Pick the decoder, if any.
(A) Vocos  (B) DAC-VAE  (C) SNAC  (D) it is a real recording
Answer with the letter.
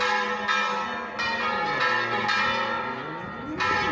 D